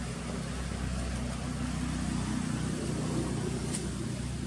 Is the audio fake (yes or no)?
no